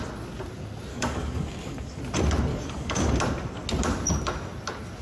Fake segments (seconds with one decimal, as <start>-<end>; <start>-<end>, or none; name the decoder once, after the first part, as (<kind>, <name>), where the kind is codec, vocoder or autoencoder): 0.9-2.0 (codec, DAC); 2.5-3.1